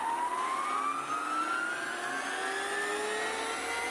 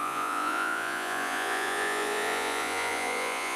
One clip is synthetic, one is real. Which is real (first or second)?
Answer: first